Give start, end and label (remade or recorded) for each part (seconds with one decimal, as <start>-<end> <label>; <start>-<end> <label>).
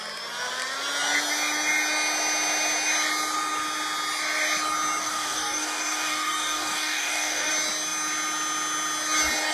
0.0-5.0 recorded; 5.0-7.5 remade; 7.5-9.5 recorded